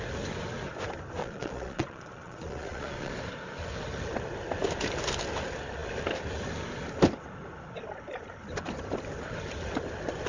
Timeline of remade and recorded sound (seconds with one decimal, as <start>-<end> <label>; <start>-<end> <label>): 0.0-1.2 recorded; 1.2-3.1 remade; 3.1-10.3 recorded